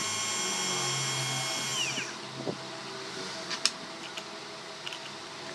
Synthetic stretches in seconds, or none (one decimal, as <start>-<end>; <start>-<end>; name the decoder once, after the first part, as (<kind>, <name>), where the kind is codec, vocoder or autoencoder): none